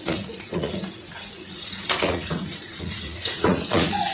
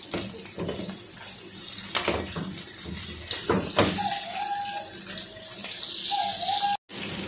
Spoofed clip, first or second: first